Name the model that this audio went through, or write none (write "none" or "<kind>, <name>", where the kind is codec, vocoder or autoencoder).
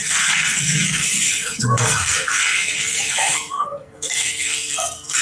codec, SNAC